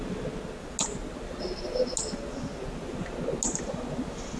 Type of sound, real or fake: real